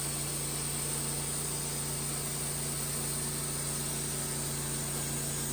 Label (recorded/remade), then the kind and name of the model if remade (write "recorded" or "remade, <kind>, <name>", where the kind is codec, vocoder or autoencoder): recorded